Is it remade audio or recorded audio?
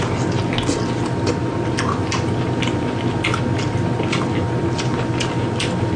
recorded